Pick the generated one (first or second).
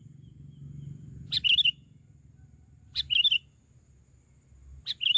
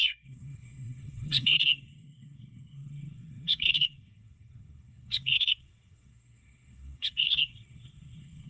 second